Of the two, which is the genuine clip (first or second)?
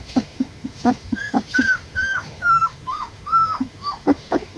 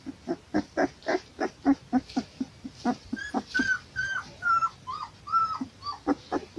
second